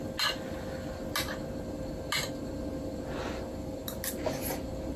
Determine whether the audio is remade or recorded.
recorded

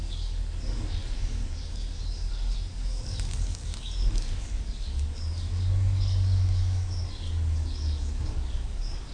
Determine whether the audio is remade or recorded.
remade